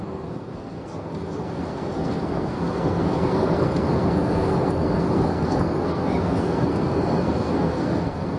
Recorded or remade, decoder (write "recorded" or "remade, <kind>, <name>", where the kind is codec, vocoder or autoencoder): remade, codec, SNAC